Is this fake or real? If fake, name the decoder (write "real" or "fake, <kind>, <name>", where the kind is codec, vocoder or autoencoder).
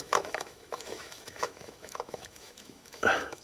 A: fake, autoencoder, DAC-VAE